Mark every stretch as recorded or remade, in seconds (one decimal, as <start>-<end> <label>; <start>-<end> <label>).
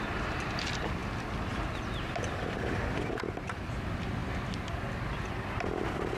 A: 0.0-6.2 recorded